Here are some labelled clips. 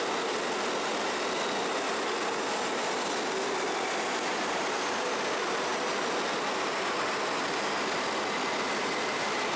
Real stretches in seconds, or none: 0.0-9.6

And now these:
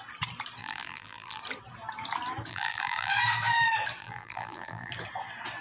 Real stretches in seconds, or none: 0.0-0.6; 1.4-2.5; 3.1-4.0; 4.9-5.6

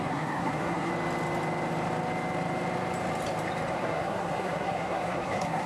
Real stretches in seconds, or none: 0.9-3.8

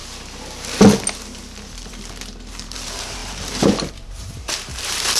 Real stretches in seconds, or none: 0.0-2.5

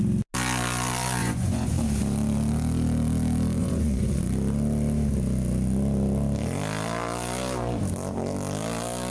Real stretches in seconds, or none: 0.0-1.2; 1.7-3.6; 4.2-9.1

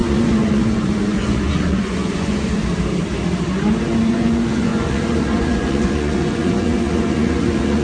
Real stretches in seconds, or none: 2.6-4.1